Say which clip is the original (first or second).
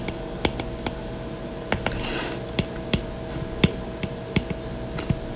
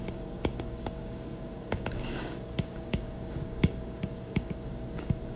first